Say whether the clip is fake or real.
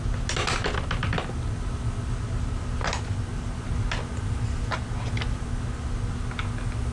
real